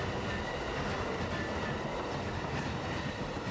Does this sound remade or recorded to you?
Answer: recorded